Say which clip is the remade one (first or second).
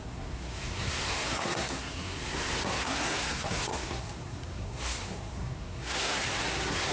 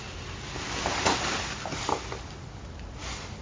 first